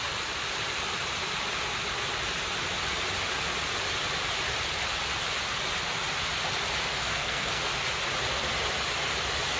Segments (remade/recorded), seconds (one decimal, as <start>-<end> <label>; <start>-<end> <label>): 0.0-7.0 recorded; 7.0-7.6 remade; 7.6-9.6 recorded